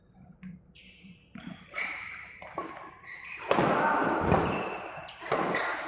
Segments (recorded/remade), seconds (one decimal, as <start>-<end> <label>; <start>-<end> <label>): 0.0-2.5 remade; 2.5-5.9 recorded